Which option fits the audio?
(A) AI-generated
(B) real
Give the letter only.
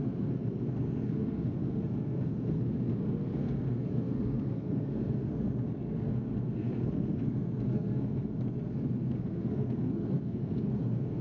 A